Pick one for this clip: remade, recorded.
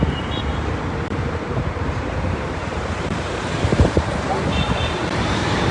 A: remade